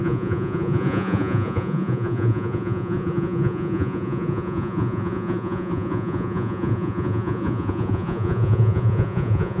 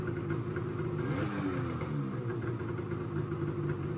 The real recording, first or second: second